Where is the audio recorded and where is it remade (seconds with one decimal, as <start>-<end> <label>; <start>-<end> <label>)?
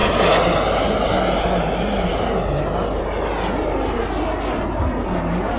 0.0-5.6 recorded